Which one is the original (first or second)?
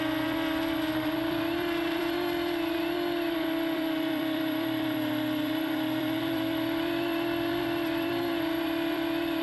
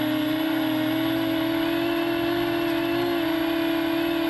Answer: second